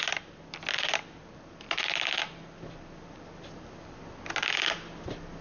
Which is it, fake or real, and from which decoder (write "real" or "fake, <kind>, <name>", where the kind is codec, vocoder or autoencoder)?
real